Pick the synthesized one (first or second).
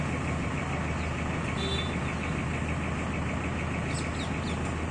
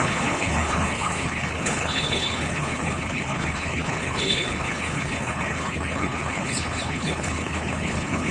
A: second